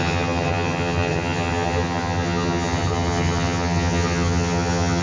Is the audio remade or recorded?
remade